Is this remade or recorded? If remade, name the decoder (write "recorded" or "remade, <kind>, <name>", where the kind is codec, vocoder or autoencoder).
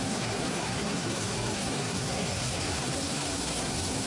remade, codec, SNAC